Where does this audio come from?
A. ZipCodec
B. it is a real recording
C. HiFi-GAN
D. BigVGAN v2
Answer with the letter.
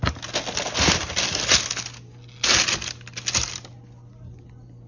B